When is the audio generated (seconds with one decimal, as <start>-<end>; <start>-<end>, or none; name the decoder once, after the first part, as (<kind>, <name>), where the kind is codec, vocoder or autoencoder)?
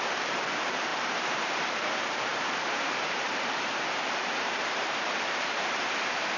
0.0-6.4 (vocoder, BigVGAN v2)